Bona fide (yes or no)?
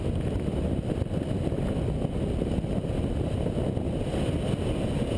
yes